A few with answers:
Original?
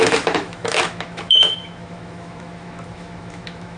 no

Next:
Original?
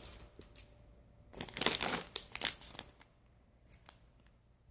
yes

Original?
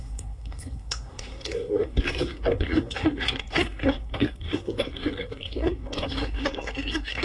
no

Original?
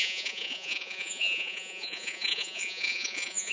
no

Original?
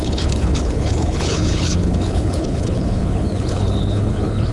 no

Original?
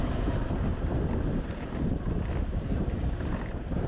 yes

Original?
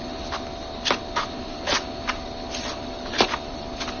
no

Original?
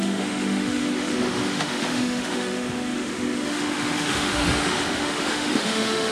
no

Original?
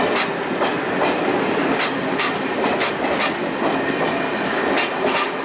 yes